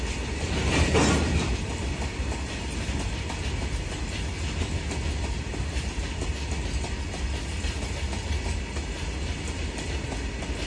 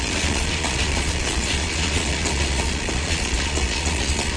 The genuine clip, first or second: first